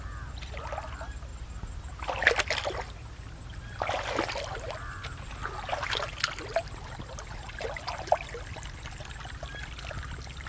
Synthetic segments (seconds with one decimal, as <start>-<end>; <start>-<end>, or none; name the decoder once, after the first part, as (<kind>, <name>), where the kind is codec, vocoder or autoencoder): none